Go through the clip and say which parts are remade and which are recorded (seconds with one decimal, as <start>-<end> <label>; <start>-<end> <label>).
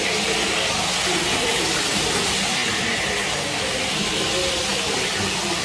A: 0.0-5.6 recorded